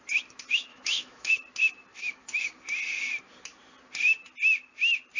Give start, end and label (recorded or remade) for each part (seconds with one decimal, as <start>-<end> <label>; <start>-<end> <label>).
0.0-0.7 recorded; 0.7-1.3 remade; 1.3-1.9 recorded; 1.9-2.5 remade; 2.5-5.2 recorded